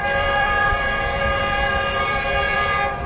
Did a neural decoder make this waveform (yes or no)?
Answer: yes